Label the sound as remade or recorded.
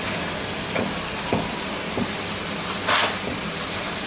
recorded